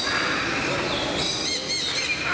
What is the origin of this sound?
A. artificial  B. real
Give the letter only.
B